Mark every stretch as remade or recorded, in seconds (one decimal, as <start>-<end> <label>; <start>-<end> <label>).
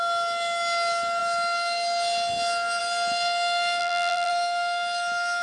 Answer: 0.0-3.8 recorded; 3.8-4.3 remade; 4.3-5.4 recorded